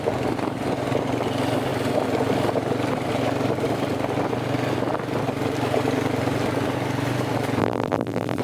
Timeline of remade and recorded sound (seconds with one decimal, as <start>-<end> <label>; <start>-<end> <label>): 0.0-7.6 recorded; 7.6-8.4 remade